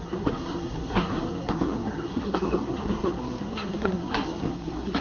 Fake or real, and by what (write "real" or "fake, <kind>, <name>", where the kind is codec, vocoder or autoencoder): fake, codec, SNAC